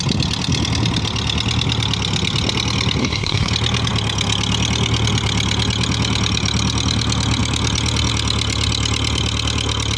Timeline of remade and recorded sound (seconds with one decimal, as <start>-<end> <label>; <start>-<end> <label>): 0.0-3.0 recorded; 3.0-3.5 remade; 3.5-10.0 recorded